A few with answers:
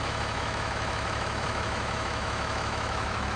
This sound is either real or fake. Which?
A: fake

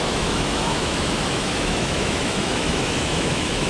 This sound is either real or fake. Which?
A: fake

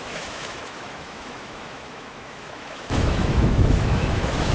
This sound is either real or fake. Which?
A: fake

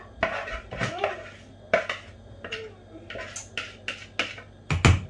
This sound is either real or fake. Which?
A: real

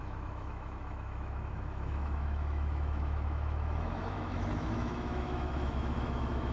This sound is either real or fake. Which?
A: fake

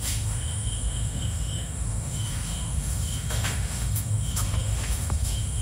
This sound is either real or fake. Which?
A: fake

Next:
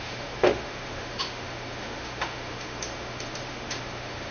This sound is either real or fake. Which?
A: fake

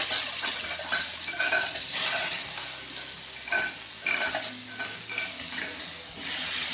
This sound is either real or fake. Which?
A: real